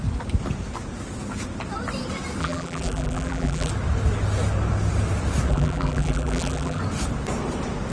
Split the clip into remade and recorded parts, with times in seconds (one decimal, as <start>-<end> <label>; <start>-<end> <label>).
0.0-2.4 recorded; 2.4-3.7 remade; 3.7-5.5 recorded; 5.5-6.8 remade; 6.8-7.9 recorded